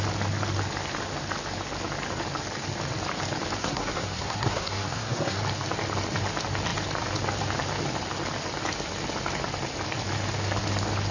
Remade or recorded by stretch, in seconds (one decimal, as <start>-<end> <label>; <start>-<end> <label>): 0.0-3.6 recorded; 3.6-5.4 remade; 5.4-11.1 recorded